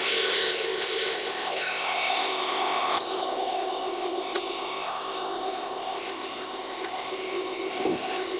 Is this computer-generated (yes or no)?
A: yes